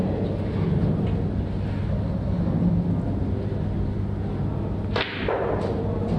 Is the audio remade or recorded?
recorded